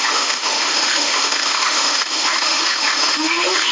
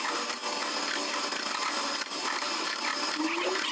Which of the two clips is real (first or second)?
second